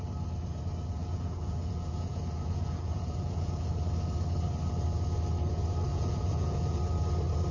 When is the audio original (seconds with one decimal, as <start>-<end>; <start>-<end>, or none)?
0.0-1.0; 3.7-5.9; 6.8-7.5